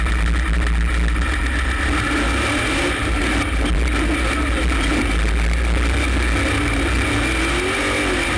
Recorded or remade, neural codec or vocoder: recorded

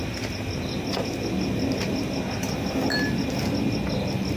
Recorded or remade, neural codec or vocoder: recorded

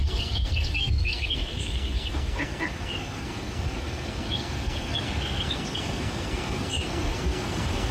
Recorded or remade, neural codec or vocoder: remade, codec, SNAC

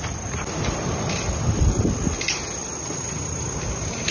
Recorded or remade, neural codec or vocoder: recorded